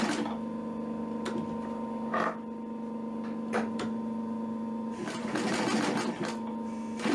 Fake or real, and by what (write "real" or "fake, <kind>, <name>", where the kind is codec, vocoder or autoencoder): real